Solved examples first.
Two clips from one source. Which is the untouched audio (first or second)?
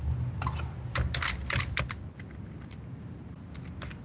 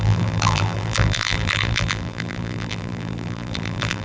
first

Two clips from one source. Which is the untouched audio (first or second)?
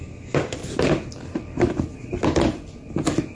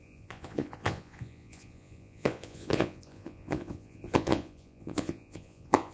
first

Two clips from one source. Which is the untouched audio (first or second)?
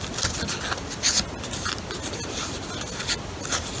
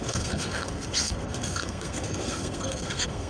first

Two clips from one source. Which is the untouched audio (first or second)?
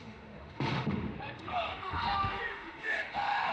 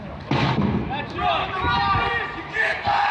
second